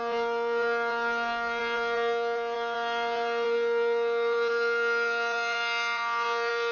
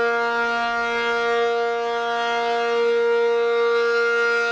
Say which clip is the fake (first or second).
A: first